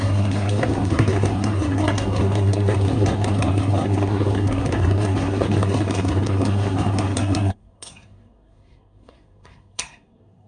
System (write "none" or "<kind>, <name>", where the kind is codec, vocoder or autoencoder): codec, SNAC